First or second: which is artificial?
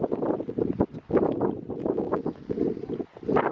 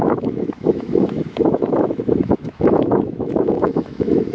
second